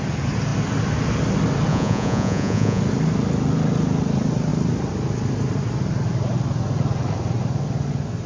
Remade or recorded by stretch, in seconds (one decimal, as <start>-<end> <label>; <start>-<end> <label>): 0.0-1.7 recorded; 1.7-2.8 remade; 2.8-8.3 recorded